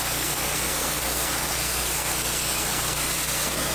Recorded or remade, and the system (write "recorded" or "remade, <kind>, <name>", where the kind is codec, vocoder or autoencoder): remade, codec, SNAC